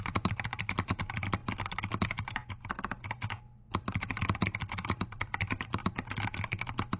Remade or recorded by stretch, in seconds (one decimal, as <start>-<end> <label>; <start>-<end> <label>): 0.0-1.4 remade; 1.4-2.0 recorded; 2.0-5.8 remade; 5.8-7.0 recorded